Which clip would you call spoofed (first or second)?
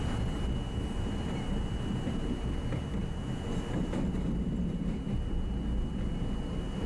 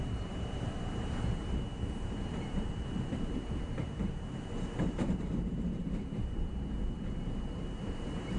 second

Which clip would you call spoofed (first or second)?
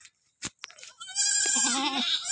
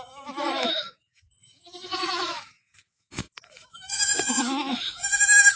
second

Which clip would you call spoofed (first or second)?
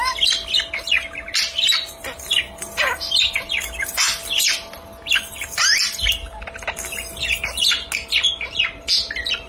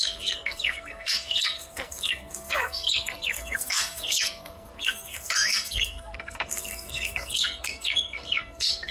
second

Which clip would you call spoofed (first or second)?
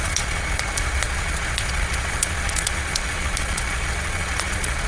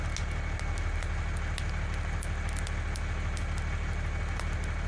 first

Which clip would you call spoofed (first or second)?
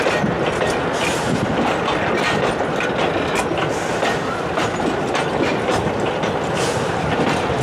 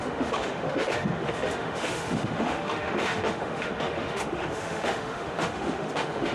second